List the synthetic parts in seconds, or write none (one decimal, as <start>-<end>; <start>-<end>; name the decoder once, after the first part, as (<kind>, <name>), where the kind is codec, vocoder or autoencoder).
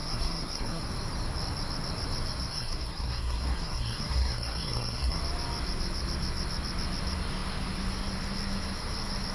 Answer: 0.0-0.8 (codec, SNAC); 2.5-5.2